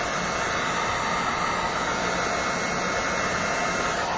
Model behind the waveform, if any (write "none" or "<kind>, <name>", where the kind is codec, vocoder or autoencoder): none